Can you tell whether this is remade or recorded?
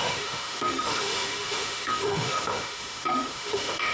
remade